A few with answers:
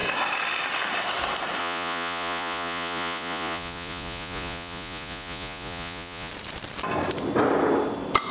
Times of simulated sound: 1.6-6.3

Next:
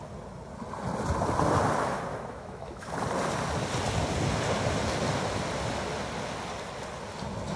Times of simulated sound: 2.1-2.9

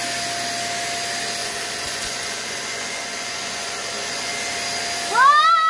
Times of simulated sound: 1.4-4.3

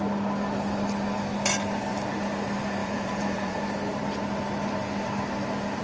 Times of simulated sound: 2.8-3.6

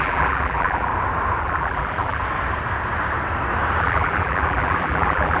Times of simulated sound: 0.0-0.9; 1.4-2.2; 3.8-5.4